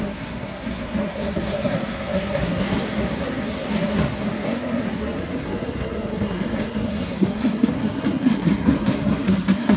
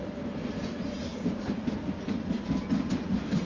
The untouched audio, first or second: second